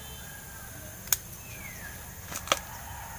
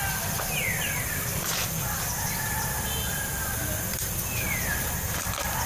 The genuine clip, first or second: first